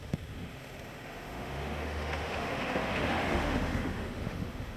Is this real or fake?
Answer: fake